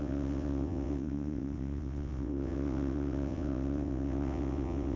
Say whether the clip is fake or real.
fake